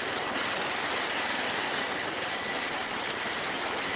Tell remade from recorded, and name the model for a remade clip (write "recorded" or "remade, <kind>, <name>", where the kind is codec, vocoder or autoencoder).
recorded